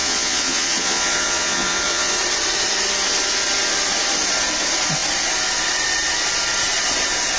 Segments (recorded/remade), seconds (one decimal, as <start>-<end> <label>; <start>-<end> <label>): 0.0-2.1 remade; 2.1-7.4 recorded